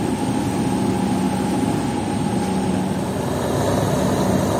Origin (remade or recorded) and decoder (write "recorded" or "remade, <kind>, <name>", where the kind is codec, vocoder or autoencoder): recorded